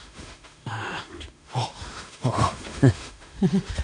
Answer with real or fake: fake